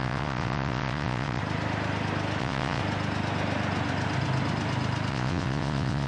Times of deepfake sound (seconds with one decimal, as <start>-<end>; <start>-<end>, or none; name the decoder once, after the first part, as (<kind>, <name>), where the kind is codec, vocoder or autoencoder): 0.0-1.4 (vocoder, WaveNeXt); 2.4-2.8; 5.1-6.1

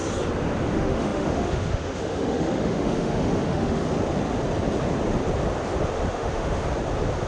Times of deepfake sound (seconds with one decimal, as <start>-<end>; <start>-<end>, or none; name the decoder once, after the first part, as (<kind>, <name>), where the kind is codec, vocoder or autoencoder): 0.7-3.8 (autoencoder, DAC-VAE); 6.1-6.6